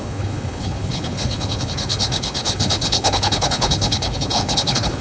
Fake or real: fake